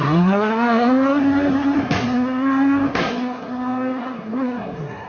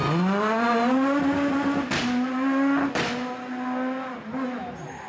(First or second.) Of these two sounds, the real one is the second